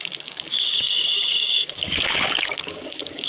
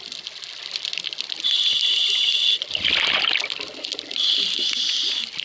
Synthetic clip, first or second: first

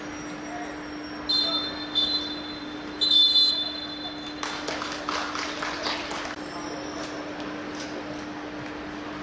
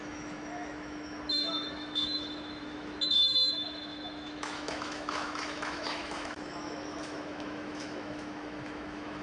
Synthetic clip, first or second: second